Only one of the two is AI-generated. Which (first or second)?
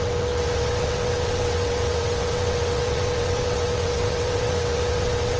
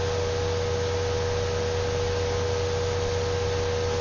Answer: first